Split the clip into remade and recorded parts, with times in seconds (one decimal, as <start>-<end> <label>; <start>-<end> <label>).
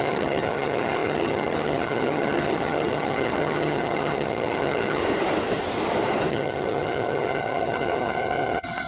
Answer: 0.0-5.0 remade; 5.0-6.3 recorded; 6.3-8.9 remade